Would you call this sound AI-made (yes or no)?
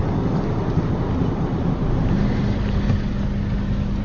no